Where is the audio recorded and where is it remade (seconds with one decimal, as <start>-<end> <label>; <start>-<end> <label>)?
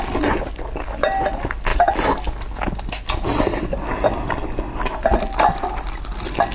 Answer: 0.0-6.5 recorded